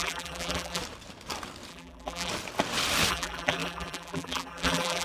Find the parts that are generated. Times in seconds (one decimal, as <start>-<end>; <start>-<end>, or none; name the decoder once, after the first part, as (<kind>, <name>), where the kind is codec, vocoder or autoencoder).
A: 0.0-0.8 (vocoder, BigVGAN v2); 1.7-2.3; 3.1-5.0